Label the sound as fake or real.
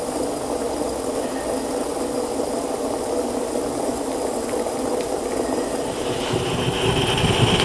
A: real